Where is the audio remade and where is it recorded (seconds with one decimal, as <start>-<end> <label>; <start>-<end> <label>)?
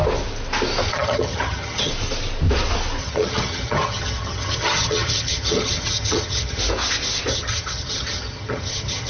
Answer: 0.0-0.9 recorded; 0.9-1.9 remade; 1.9-3.0 recorded; 3.0-6.6 remade; 6.6-7.3 recorded; 7.3-9.1 remade